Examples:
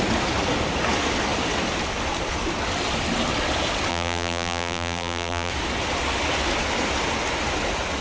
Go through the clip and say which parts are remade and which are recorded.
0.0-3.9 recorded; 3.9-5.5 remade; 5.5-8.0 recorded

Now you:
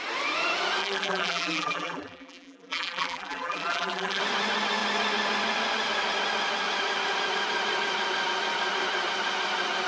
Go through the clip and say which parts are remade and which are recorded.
0.0-0.8 recorded; 0.8-4.2 remade; 4.2-9.9 recorded

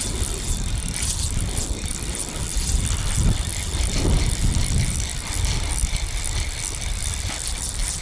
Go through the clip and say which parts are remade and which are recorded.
0.0-5.1 remade; 5.1-6.8 recorded; 6.8-8.0 remade

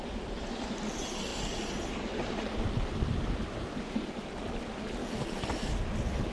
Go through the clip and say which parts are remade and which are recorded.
0.0-6.3 recorded

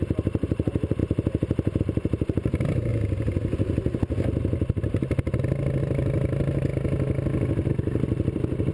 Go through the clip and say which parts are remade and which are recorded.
0.0-1.0 remade; 1.0-1.8 recorded; 1.8-2.9 remade; 2.9-5.8 recorded; 5.8-6.7 remade; 6.7-7.7 recorded; 7.7-8.7 remade

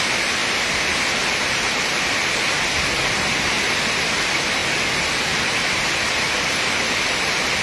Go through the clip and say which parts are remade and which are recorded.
0.0-4.6 remade; 4.6-5.2 recorded; 5.2-7.6 remade

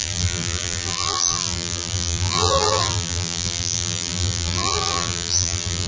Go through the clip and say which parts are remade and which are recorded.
0.0-5.9 remade